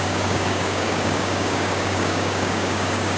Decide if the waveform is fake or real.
fake